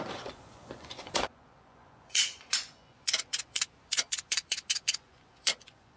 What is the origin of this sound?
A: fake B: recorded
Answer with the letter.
A